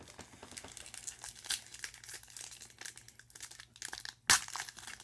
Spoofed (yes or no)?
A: no